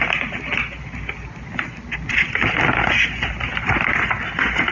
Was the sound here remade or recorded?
recorded